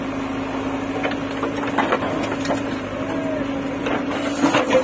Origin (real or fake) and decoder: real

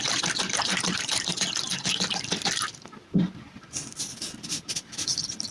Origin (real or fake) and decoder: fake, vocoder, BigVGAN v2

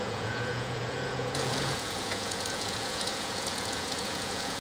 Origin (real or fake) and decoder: fake, vocoder, Vocos